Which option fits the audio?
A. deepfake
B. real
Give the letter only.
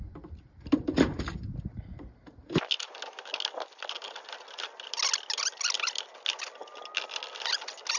B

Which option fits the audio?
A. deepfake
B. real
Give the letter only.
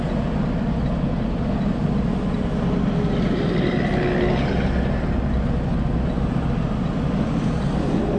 B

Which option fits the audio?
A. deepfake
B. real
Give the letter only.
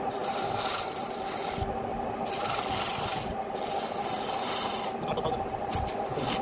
B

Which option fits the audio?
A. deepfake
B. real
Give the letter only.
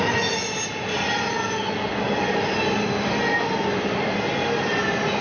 B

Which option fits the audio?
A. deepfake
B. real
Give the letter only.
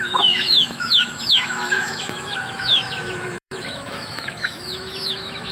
A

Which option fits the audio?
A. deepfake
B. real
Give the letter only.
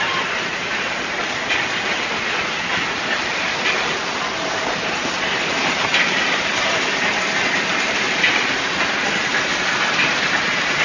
B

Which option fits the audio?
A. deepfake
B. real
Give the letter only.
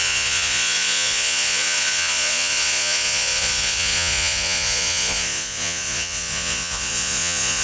A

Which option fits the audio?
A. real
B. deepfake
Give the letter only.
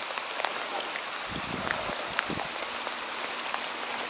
A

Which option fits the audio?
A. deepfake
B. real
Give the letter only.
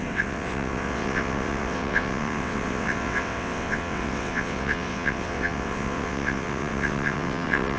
A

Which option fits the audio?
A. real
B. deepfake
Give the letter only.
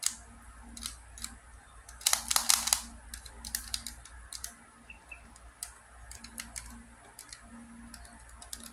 A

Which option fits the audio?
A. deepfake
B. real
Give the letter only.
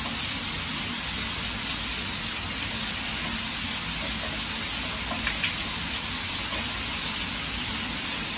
B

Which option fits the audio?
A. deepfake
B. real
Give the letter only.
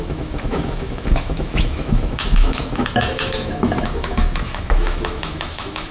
A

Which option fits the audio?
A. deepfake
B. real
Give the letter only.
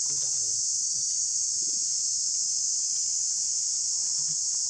B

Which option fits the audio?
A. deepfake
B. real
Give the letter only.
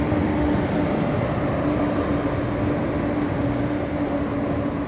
B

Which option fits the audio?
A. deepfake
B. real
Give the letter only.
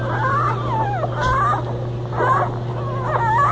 B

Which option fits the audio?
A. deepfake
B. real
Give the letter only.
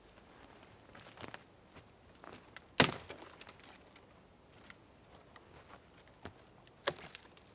B